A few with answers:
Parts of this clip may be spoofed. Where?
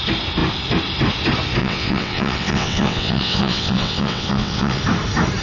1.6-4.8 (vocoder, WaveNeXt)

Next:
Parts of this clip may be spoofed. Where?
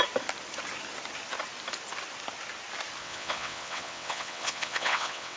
3.0-5.4 (vocoder, WaveNeXt)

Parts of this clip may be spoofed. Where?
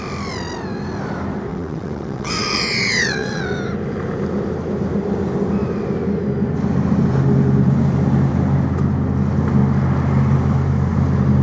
1.5-3.4 (vocoder, WaveNeXt)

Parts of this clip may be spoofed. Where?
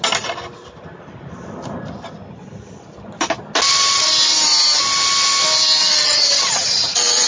5.8-7.3 (vocoder, WaveNeXt)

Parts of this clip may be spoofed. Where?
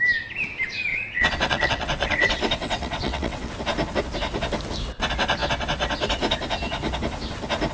0.9-3.5 (vocoder, WaveNeXt)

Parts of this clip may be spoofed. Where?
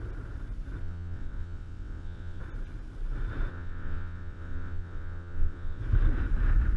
0.8-2.4 (vocoder, WaveNeXt); 3.5-5.8